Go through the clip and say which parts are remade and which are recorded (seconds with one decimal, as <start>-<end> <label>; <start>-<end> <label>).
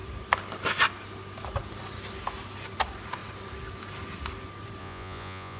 0.0-4.8 recorded; 4.8-5.6 remade